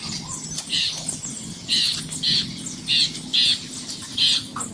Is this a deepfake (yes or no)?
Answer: no